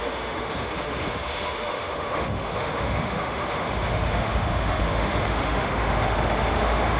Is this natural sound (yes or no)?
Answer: no